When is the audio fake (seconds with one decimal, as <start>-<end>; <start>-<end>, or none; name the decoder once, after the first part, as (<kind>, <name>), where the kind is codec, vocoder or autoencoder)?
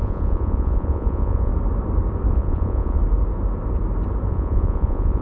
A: 0.0-1.5 (vocoder, Vocos); 2.3-3.0; 4.3-5.2